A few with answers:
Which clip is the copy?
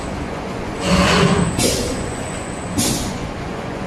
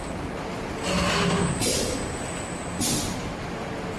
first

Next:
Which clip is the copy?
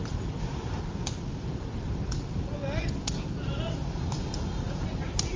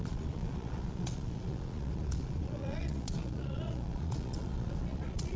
second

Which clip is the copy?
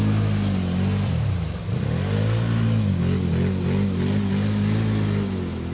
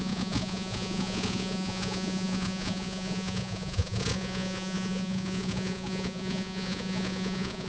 second